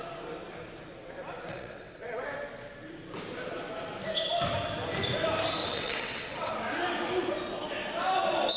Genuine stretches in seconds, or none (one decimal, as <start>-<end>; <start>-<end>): 0.0-1.5; 2.2-5.6; 6.5-8.6